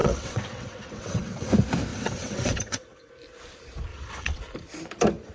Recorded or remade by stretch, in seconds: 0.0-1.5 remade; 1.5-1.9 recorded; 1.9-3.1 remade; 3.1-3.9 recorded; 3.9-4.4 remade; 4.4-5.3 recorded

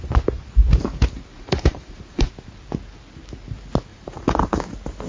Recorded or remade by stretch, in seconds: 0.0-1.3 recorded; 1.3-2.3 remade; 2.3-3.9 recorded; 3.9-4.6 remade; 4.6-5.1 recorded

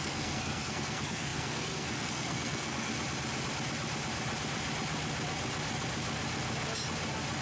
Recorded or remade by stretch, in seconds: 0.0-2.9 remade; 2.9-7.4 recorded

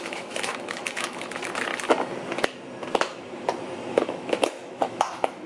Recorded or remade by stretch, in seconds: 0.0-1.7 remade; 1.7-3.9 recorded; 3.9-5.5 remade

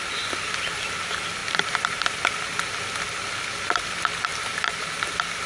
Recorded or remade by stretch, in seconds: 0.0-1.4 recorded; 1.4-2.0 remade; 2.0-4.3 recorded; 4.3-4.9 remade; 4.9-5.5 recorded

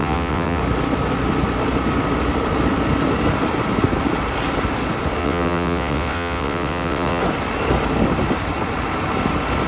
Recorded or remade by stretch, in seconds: 0.0-0.6 remade; 0.6-5.2 recorded; 5.2-7.2 remade; 7.2-9.7 recorded